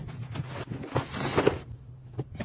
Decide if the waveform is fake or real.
real